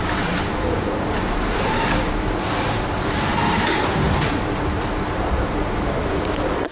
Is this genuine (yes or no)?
no